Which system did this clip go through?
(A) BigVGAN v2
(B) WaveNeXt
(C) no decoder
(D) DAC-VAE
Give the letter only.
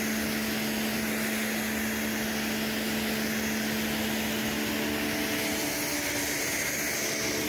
C